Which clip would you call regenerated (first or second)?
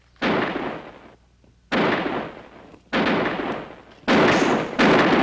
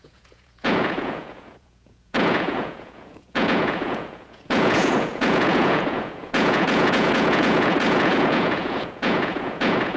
second